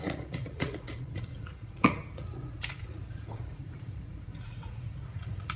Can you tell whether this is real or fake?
fake